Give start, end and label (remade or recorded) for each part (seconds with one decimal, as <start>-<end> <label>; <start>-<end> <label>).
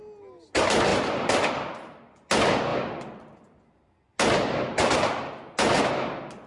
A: 0.0-0.9 recorded; 0.9-2.0 remade; 2.0-6.5 recorded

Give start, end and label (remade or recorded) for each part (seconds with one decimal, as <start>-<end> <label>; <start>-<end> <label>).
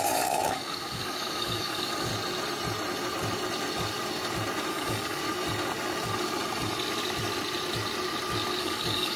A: 0.0-2.1 remade; 2.1-4.7 recorded; 4.7-5.2 remade; 5.2-8.6 recorded; 8.6-9.2 remade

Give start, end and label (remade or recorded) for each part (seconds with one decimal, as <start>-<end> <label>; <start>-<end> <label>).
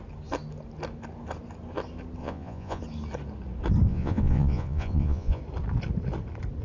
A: 0.0-2.2 recorded; 2.2-2.8 remade; 2.8-3.9 recorded; 3.9-5.4 remade; 5.4-6.6 recorded